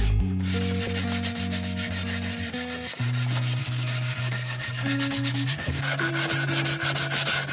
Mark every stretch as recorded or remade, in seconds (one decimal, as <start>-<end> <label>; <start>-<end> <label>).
0.0-3.6 recorded; 3.6-6.1 remade; 6.1-7.5 recorded